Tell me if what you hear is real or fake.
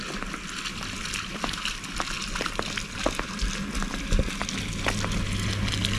real